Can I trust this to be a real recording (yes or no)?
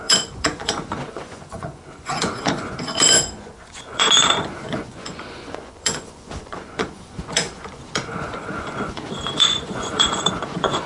no